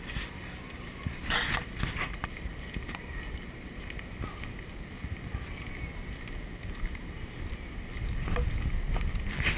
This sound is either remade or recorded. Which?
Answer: recorded